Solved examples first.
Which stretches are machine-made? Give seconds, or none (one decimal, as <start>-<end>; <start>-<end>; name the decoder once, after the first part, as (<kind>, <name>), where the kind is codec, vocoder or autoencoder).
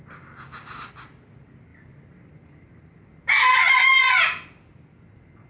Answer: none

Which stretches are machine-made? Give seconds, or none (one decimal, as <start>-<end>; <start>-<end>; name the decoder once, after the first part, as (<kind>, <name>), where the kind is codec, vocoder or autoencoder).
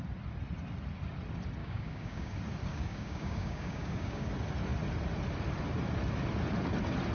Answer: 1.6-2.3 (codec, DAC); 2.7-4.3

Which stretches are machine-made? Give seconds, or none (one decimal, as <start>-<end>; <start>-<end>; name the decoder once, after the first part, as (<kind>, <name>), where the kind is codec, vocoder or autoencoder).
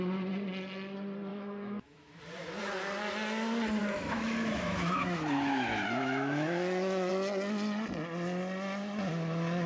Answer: 1.3-2.2 (autoencoder, DAC-VAE); 3.8-7.1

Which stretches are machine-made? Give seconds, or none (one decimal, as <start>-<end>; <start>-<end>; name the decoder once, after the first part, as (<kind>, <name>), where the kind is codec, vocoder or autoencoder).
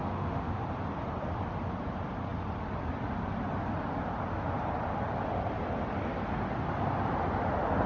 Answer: 0.0-0.6 (autoencoder, DAC-VAE)